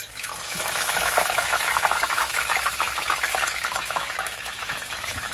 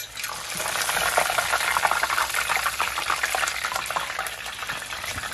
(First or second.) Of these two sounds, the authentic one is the second